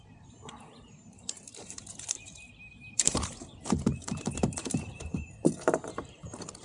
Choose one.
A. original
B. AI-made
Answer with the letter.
B